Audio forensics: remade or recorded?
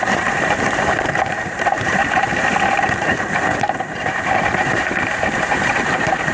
remade